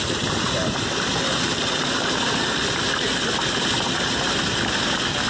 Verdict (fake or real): real